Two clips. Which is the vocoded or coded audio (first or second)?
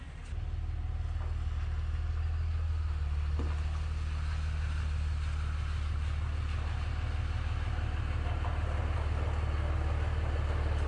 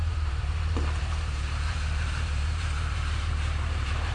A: second